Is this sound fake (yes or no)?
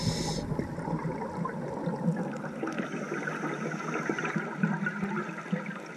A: no